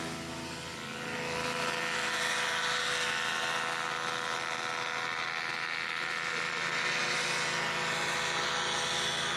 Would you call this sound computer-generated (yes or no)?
no